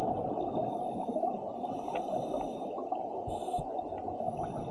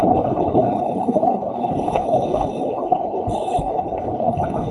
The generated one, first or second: second